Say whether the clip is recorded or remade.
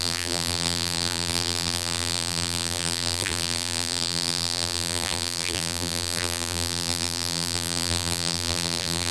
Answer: remade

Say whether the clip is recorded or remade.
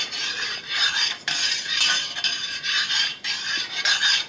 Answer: remade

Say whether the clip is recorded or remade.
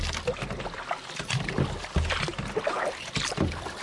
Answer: recorded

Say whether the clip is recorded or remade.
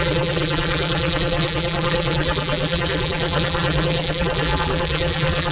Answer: remade